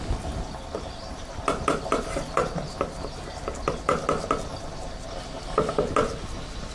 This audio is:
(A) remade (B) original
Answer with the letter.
B